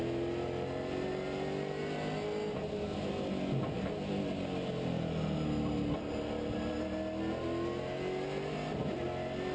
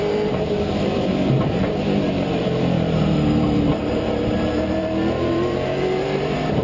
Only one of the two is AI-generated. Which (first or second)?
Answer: second